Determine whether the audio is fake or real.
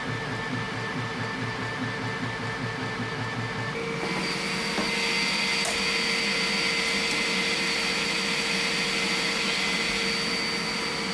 real